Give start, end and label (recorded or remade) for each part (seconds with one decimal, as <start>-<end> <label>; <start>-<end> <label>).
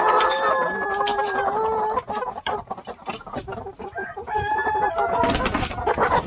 0.0-1.1 recorded; 1.1-4.9 remade; 4.9-6.3 recorded